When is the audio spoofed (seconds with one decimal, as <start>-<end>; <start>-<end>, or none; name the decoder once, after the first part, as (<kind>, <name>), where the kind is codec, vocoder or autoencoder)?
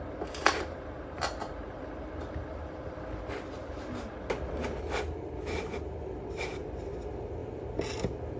none